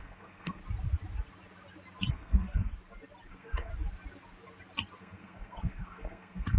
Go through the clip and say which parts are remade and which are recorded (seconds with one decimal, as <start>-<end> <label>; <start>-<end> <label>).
0.0-0.6 remade; 0.6-2.1 recorded; 2.1-2.7 remade; 2.7-3.3 recorded; 3.3-3.7 remade; 3.7-5.0 recorded; 5.0-6.6 remade